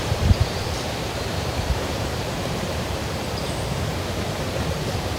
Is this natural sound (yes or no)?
no